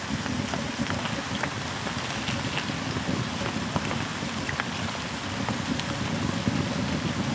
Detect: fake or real real